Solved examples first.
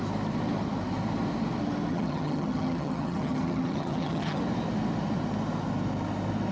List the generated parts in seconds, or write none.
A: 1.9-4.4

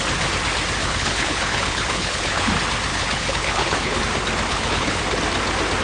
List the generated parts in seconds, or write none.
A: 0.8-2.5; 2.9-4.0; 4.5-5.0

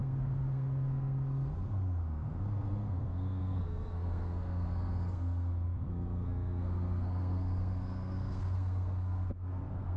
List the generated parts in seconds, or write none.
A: 0.0-10.0

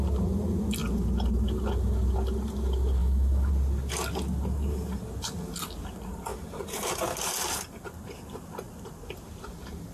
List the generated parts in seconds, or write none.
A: 3.0-3.5

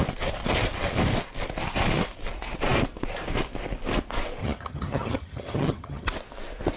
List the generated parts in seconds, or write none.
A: 4.4-6.1

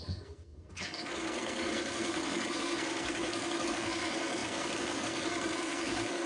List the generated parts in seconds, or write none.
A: 0.0-6.3

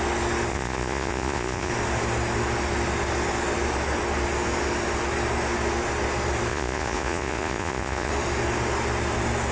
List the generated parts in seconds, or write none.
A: 0.5-1.7; 6.5-8.1

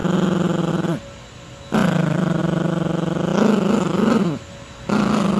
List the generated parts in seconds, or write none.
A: none